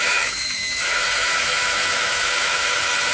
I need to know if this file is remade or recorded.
remade